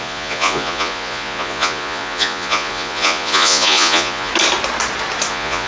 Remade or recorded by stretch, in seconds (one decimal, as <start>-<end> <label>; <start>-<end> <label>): 0.0-4.3 remade; 4.3-5.3 recorded; 5.3-5.7 remade